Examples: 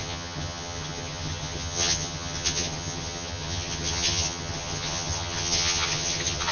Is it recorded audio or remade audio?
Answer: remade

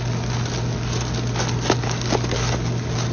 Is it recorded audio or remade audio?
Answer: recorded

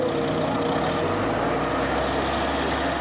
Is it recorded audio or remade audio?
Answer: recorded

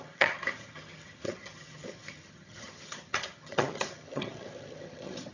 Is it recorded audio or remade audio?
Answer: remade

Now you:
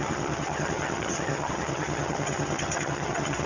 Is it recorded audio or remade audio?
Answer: remade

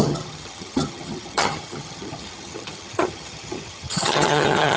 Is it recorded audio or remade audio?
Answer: remade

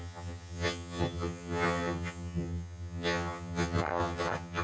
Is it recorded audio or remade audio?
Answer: remade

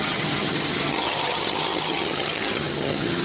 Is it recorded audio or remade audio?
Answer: remade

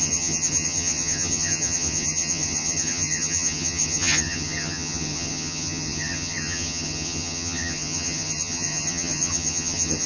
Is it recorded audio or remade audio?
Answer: remade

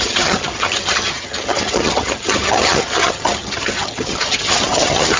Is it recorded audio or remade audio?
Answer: remade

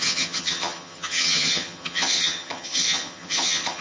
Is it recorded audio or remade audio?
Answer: remade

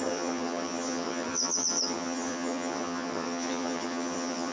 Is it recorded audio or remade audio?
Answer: remade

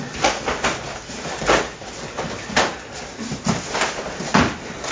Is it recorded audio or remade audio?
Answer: recorded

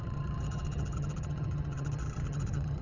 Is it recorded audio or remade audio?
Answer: remade